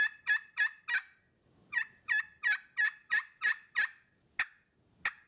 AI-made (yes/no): no